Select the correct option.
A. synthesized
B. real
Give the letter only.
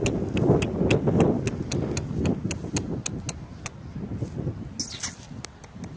B